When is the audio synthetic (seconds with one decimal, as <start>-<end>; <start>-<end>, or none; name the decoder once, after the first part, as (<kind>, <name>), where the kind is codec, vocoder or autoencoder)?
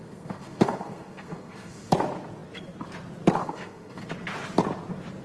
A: 0.0-1.9 (codec, SNAC); 3.4-4.1